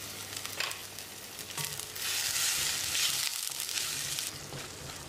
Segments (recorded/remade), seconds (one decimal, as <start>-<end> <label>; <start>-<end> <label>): 0.0-5.1 recorded